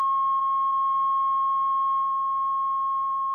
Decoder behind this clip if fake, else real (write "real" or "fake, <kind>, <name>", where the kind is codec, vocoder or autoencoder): real